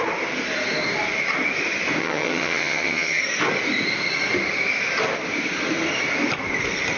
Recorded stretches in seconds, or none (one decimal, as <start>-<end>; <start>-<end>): 0.0-2.0; 3.2-7.0